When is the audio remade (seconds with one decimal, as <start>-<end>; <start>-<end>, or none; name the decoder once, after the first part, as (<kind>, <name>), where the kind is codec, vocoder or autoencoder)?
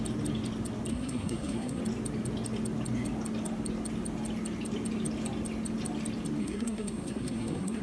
0.9-1.8 (codec, SNAC); 6.4-7.8